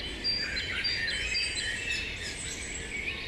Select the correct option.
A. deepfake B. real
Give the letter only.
A